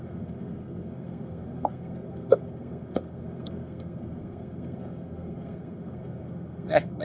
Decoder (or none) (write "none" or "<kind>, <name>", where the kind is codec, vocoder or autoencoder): codec, SNAC